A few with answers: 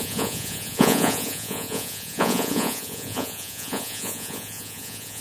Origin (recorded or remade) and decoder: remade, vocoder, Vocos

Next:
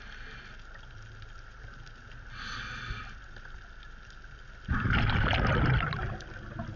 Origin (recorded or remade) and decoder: recorded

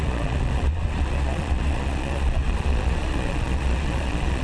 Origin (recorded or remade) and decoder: remade, vocoder, Vocos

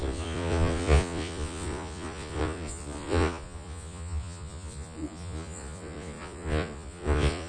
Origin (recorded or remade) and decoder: remade, vocoder, Vocos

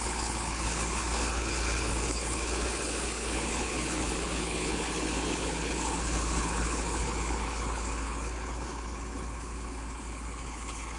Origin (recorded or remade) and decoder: remade, codec, HILCodec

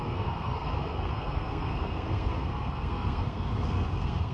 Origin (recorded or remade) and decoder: remade, codec, SNAC